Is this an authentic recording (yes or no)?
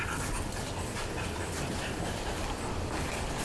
yes